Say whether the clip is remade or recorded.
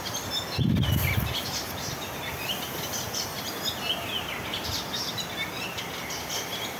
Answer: recorded